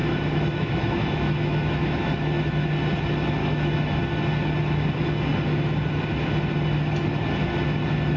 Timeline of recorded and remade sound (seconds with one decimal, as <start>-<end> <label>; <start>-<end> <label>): 0.0-2.7 remade; 2.7-3.4 recorded; 3.4-4.0 remade; 4.0-8.2 recorded